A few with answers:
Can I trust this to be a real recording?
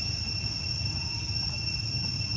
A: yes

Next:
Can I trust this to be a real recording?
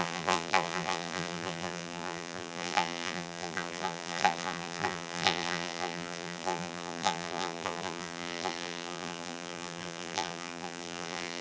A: no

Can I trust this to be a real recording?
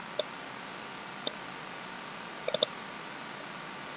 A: yes